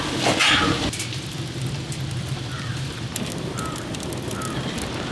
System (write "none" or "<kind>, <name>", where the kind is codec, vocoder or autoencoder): none